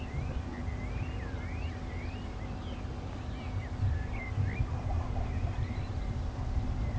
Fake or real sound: fake